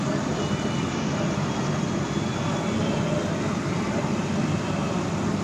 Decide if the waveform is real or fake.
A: real